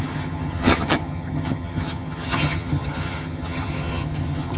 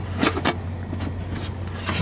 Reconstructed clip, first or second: first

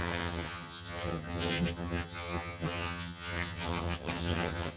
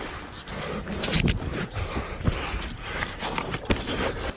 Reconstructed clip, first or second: first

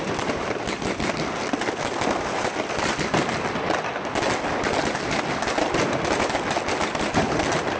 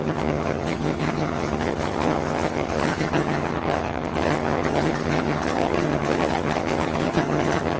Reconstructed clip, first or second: second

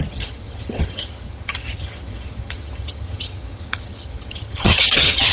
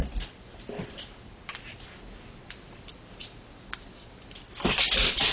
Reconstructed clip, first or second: first